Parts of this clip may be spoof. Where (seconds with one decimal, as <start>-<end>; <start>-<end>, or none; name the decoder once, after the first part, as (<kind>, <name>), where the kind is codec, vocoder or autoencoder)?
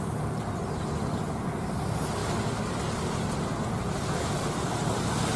1.1-1.7 (codec, DAC)